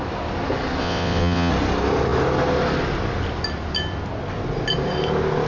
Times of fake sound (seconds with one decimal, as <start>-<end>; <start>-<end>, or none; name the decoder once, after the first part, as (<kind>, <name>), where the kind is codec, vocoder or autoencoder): 0.8-1.5 (vocoder, WaveNeXt)